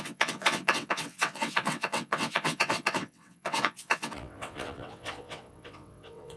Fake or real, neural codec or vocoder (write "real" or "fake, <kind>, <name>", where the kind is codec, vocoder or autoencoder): fake, vocoder, WaveNeXt